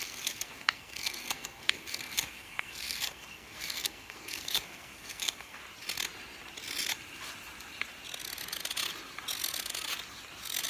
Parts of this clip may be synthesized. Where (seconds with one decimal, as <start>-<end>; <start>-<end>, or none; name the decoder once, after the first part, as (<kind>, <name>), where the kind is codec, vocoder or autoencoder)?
0.0-5.6 (codec, SNAC)